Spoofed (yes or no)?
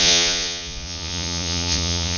yes